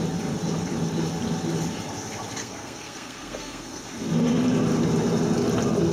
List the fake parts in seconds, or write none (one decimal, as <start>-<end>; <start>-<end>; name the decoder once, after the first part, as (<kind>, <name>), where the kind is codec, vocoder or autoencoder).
2.4-3.8 (codec, SNAC)